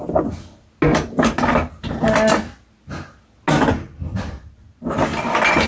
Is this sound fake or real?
real